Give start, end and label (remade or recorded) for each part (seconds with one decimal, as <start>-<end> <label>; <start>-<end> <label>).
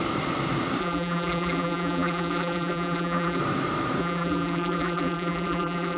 0.0-0.8 recorded; 0.8-3.4 remade; 3.4-4.0 recorded; 4.0-6.0 remade